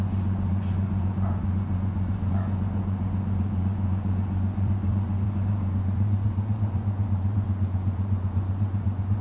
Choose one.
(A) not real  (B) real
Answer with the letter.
A